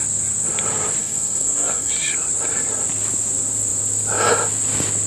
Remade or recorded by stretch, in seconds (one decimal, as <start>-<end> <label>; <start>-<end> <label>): 0.0-1.0 recorded; 1.0-1.9 remade; 1.9-5.1 recorded